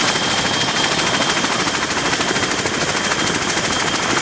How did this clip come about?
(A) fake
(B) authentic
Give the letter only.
B